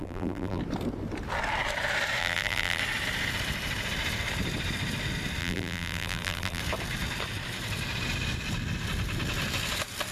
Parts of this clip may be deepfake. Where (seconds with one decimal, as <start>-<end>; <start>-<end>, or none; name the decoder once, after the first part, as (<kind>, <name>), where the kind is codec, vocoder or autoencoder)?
0.0-0.6 (vocoder, BigVGAN v2); 2.2-2.8; 5.4-6.6

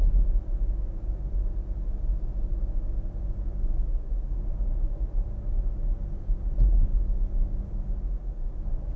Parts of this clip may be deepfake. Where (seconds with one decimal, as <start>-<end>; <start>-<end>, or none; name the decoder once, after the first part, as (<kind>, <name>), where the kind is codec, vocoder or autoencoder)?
none

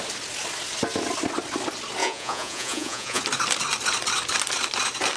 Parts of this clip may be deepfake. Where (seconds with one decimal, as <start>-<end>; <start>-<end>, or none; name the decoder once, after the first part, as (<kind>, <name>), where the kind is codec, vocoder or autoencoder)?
2.0-3.2 (vocoder, Vocos)

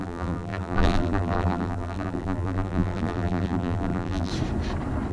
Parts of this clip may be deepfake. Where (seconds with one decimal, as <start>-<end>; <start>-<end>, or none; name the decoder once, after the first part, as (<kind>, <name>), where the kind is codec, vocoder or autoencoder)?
0.0-4.3 (vocoder, BigVGAN v2)

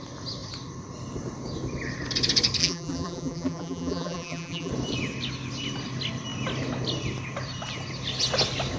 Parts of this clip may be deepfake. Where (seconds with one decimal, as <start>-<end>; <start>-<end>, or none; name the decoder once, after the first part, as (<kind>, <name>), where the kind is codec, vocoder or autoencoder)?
2.6-4.7 (vocoder, BigVGAN v2)

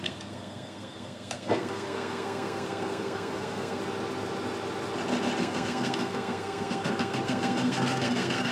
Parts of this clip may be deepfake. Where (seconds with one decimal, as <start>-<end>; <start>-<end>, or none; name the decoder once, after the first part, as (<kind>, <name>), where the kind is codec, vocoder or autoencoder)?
0.0-3.8 (codec, SNAC); 5.4-8.5

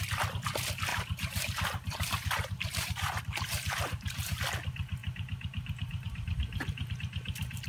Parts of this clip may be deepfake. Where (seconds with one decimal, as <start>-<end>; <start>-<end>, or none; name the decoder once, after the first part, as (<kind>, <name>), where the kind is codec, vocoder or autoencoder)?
0.9-4.4 (vocoder, BigVGAN v2); 5.0-6.9

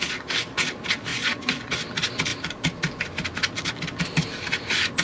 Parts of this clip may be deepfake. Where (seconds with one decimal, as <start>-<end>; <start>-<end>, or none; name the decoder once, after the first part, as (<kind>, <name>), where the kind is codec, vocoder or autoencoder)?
1.1-1.7 (vocoder, Vocos)